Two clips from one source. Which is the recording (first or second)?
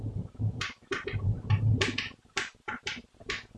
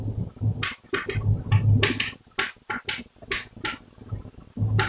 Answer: second